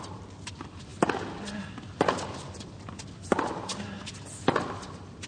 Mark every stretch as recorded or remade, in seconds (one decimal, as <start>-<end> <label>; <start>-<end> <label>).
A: 0.0-5.3 recorded